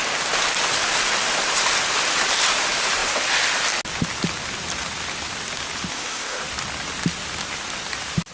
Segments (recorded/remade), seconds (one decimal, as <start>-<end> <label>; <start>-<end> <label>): 0.0-5.9 recorded; 5.9-6.4 remade; 6.4-8.3 recorded